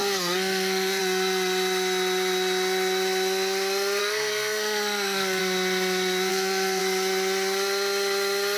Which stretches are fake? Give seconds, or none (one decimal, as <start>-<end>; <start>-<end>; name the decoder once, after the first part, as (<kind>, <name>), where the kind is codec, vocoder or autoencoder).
0.0-1.0 (codec, SNAC); 4.0-5.4; 6.3-6.8